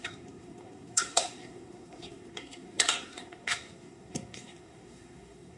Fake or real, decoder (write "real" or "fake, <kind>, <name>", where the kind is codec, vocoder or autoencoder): fake, codec, SNAC